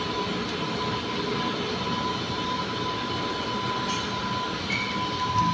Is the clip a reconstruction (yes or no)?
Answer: no